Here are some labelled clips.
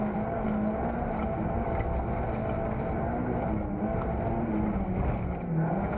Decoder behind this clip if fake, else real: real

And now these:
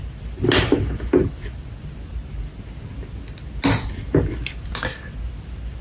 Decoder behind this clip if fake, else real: real